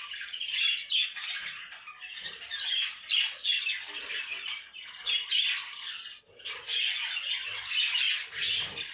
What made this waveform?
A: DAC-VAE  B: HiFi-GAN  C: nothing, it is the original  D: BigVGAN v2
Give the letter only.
C